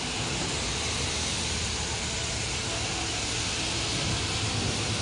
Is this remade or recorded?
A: recorded